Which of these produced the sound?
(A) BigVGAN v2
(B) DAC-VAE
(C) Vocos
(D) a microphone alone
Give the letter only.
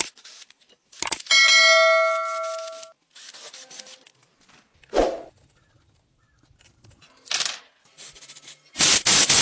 D